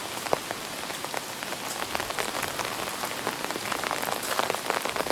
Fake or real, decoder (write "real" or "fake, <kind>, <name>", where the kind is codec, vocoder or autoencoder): real